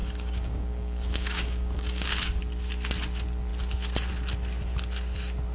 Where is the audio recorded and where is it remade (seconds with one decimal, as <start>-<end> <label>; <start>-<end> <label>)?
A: 0.0-2.4 remade; 2.4-5.5 recorded